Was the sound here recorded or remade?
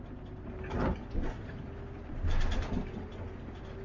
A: recorded